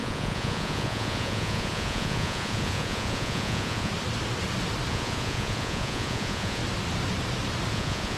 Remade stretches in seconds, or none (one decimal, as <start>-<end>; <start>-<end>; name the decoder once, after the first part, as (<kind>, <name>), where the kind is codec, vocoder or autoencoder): 0.0-3.9 (vocoder, Vocos); 4.9-6.6; 7.7-8.2